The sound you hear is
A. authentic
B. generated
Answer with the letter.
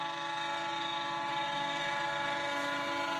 A